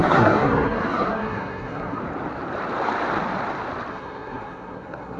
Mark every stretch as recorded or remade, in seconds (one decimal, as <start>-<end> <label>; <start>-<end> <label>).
0.0-2.0 remade; 2.0-3.9 recorded; 3.9-5.2 remade